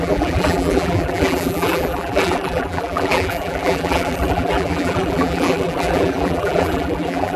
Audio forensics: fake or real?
fake